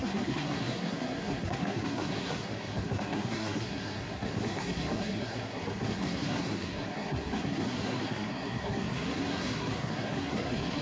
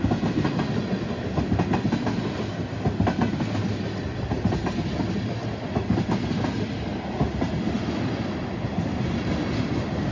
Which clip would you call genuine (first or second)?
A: second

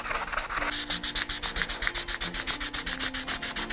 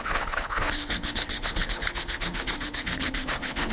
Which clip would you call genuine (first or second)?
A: first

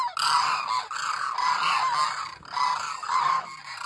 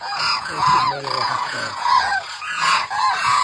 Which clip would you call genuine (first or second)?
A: first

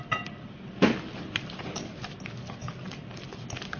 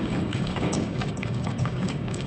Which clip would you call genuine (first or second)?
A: first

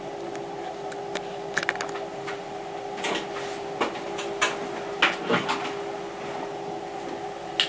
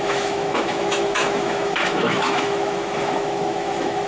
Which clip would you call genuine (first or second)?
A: first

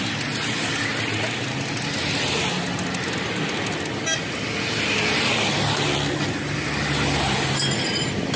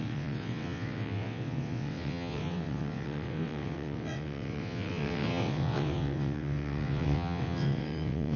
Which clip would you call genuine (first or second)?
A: first